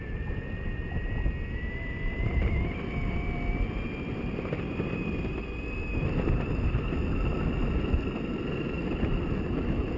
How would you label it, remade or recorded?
recorded